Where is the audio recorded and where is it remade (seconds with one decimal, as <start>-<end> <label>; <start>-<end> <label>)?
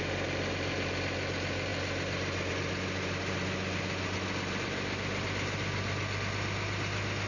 0.0-7.3 recorded